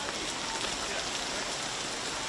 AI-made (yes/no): no